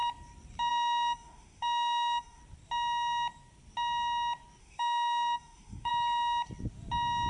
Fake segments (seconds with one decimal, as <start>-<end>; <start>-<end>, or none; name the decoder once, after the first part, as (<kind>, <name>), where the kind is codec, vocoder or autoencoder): 0.7-2.4 (autoencoder, DAC-VAE); 4.6-5.9